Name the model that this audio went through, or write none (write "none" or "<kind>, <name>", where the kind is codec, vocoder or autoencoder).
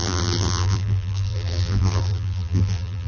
vocoder, BigVGAN v2